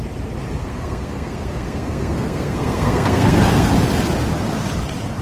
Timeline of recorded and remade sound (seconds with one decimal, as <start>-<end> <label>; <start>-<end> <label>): 0.0-0.6 recorded; 0.6-3.7 remade; 3.7-5.2 recorded